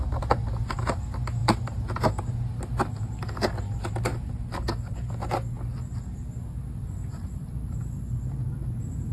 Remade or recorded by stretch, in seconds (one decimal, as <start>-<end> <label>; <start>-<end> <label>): 0.0-1.4 recorded; 1.4-2.3 remade; 2.3-4.1 recorded; 4.1-5.1 remade; 5.1-9.1 recorded